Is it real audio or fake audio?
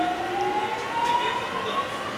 real